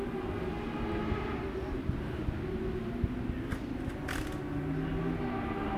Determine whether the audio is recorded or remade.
recorded